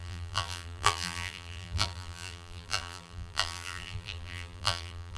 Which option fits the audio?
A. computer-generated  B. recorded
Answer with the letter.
A